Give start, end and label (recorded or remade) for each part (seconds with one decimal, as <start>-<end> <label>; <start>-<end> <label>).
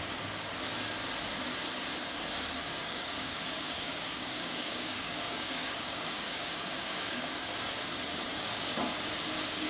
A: 0.0-2.6 recorded; 2.6-7.3 remade; 7.3-8.3 recorded; 8.3-8.8 remade; 8.8-9.7 recorded